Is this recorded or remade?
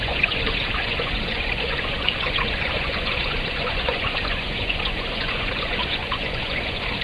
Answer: remade